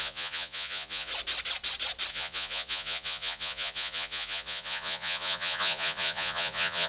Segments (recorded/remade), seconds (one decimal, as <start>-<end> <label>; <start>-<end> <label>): 0.0-1.1 remade; 1.1-2.1 recorded; 2.1-6.9 remade